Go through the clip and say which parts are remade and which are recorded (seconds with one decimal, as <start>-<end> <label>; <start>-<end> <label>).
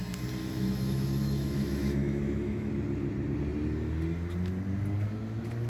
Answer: 0.0-0.4 recorded; 0.4-2.7 remade; 2.7-5.7 recorded